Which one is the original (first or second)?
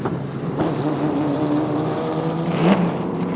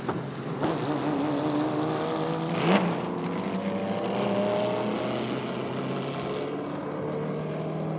second